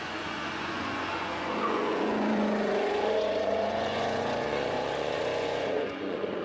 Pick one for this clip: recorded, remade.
remade